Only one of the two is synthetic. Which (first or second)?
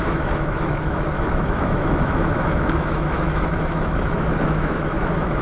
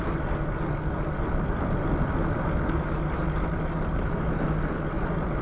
first